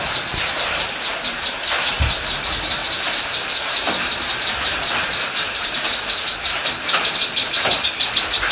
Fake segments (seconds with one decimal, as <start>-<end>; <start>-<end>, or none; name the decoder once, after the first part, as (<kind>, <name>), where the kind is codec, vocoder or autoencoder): 0.0-8.5 (vocoder, BigVGAN v2)